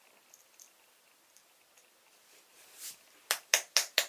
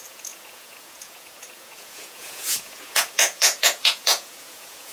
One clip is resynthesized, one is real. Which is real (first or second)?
first